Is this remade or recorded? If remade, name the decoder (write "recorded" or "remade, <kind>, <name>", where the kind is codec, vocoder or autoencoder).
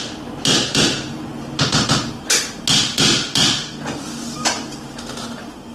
recorded